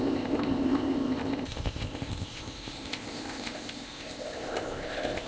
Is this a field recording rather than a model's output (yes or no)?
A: no